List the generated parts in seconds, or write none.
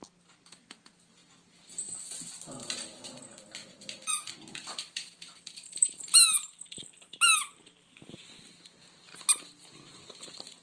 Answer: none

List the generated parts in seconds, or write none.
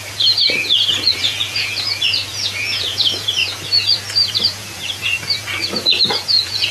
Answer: 0.0-6.7 (vocoder, Vocos)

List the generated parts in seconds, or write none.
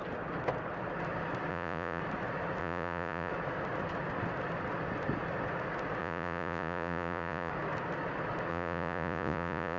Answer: 1.5-2.0 (vocoder, Vocos); 2.6-3.3; 6.0-7.5; 8.5-9.8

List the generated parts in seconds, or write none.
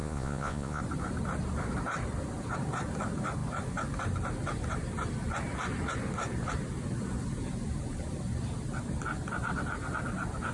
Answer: 0.0-0.8 (vocoder, Vocos)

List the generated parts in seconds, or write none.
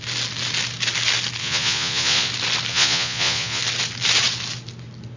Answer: 1.4-2.3 (vocoder, Vocos); 2.7-3.6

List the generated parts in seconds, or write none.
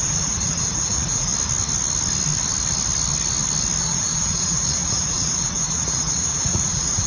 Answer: 0.0-1.3 (vocoder, Vocos); 3.8-7.1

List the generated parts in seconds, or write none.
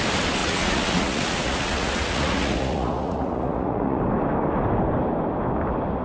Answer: 0.4-4.0 (vocoder, Vocos)